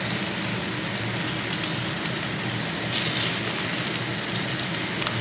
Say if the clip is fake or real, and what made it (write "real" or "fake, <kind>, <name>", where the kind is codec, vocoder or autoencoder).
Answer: real